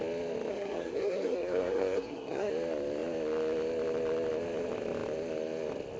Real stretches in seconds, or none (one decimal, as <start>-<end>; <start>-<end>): 0.0-0.5; 2.5-6.0